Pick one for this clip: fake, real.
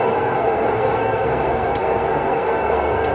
fake